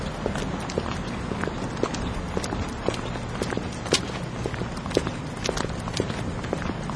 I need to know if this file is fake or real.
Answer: real